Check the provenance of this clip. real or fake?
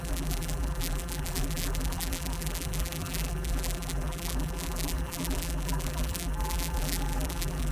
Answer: fake